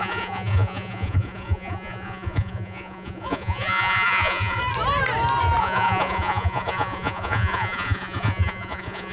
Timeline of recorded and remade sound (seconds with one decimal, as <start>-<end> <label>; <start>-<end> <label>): 0.0-4.6 remade; 4.6-5.6 recorded; 5.6-9.1 remade